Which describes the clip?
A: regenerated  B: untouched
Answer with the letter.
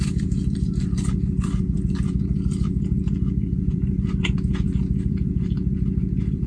A